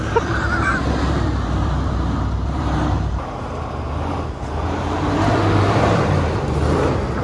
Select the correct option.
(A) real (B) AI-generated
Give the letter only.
B